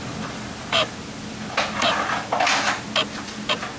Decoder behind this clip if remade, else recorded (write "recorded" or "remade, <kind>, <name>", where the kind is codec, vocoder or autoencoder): recorded